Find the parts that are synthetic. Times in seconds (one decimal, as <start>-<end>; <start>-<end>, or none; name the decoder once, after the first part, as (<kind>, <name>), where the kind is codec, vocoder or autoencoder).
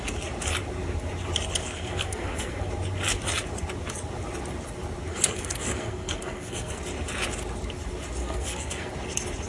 1.6-2.7 (codec, SNAC); 5.1-6.8; 8.2-8.9